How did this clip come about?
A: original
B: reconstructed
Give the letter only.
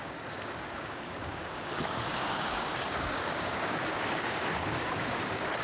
B